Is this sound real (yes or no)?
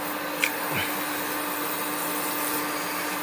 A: yes